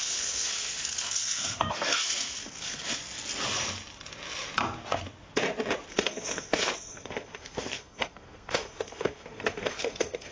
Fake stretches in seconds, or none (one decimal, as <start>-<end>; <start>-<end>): 0.0-3.0; 5.9-10.3